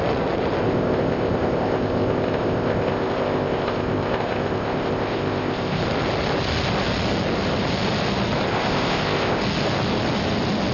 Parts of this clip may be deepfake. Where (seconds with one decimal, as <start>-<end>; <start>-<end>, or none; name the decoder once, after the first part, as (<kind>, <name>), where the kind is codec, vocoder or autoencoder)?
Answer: 0.6-5.8 (codec, ZipCodec); 8.5-9.4